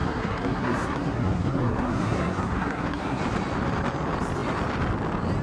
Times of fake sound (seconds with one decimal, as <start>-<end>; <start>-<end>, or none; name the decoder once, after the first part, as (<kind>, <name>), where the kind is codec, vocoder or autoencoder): 0.0-3.2 (codec, SNAC)

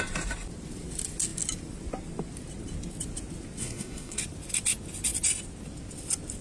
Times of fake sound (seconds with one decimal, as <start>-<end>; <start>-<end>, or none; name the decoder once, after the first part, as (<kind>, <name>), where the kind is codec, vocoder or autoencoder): 3.6-4.2 (codec, SNAC)

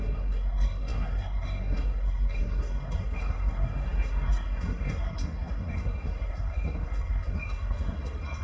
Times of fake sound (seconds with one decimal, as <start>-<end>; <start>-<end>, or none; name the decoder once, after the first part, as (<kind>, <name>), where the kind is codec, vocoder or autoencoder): 0.0-8.4 (codec, SNAC)

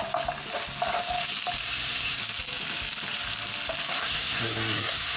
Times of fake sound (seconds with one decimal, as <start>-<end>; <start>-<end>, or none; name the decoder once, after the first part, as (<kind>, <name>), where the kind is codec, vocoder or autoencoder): 1.6-2.2 (codec, SNAC); 4.0-5.2

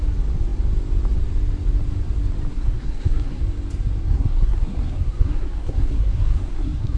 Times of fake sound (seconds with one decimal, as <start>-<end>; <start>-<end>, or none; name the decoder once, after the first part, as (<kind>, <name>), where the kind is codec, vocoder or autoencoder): 2.5-3.4 (codec, SNAC); 4.1-7.0